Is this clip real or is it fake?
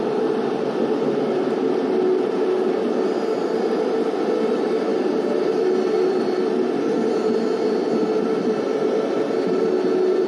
real